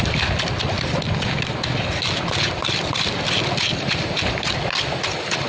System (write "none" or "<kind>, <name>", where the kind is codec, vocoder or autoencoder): none